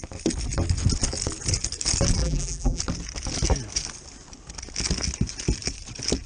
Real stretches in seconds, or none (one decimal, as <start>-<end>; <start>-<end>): 0.0-2.2; 2.8-6.3